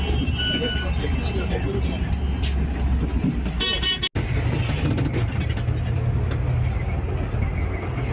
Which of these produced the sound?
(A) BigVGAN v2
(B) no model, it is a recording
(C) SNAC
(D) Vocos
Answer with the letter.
B